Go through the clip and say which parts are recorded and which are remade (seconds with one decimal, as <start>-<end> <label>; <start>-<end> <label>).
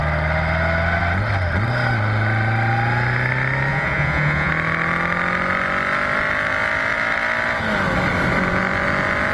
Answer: 0.0-3.7 recorded; 3.7-4.5 remade; 4.5-9.3 recorded